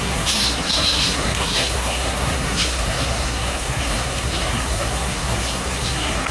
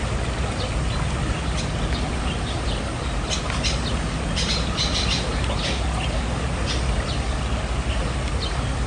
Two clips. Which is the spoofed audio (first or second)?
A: first